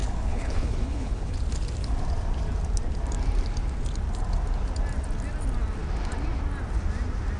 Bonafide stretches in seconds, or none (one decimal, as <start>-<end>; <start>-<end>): 1.4-7.4